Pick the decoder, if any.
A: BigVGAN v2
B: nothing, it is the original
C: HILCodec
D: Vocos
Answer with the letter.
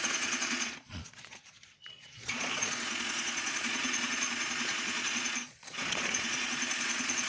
D